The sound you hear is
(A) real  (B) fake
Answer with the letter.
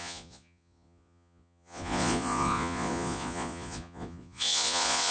B